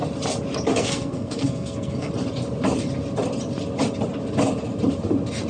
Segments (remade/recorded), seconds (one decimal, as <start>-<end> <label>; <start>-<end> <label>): 0.0-0.7 recorded; 0.7-2.1 remade; 2.1-5.5 recorded